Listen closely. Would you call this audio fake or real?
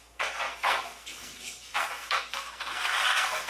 fake